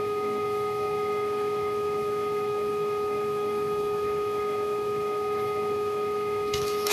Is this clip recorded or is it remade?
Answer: remade